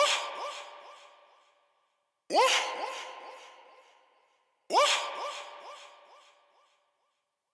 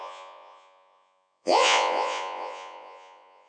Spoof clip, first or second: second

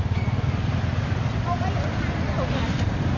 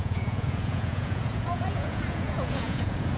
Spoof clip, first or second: second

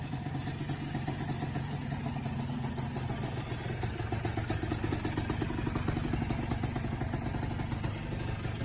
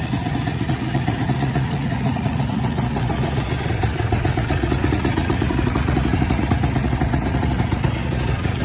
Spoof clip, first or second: second